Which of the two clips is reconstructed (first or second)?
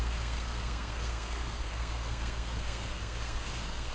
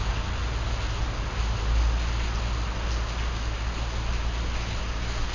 first